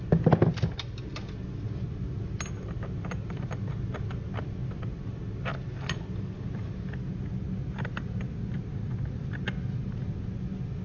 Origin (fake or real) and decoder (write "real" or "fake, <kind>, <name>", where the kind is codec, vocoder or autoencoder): real